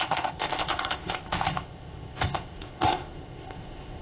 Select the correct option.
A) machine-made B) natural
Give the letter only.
A